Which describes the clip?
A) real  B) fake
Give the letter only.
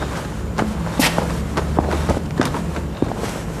A